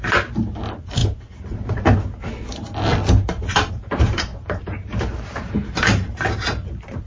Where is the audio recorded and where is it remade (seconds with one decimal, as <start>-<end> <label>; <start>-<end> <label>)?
0.0-1.0 remade; 1.0-3.7 recorded; 3.7-7.1 remade